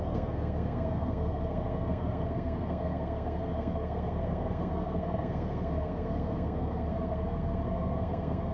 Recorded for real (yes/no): no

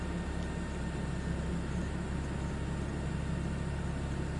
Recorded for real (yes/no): yes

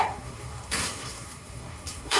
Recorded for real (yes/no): no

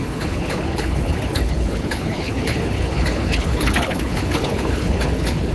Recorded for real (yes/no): no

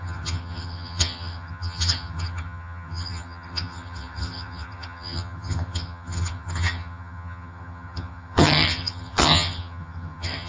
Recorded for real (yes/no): no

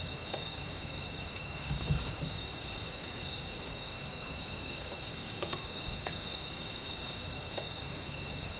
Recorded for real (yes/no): no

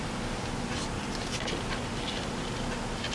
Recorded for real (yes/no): yes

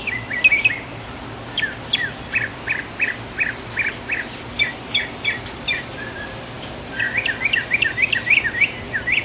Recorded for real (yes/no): yes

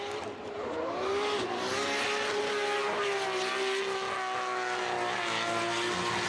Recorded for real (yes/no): yes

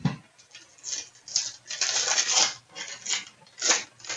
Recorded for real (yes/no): yes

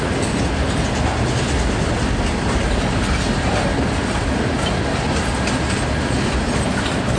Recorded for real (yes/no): yes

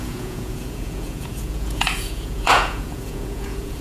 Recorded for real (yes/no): no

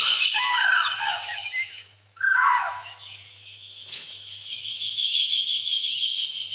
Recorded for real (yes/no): no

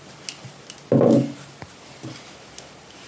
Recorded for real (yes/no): yes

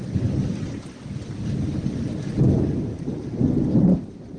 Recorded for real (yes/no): yes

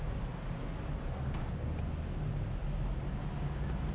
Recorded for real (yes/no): yes